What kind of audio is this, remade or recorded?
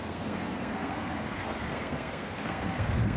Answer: remade